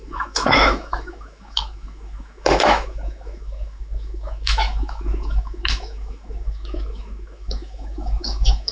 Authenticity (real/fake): fake